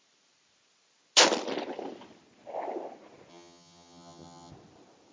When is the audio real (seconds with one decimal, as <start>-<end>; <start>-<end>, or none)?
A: 0.0-3.3; 4.5-5.1